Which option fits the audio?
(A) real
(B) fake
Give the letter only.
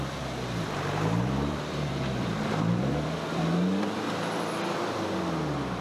B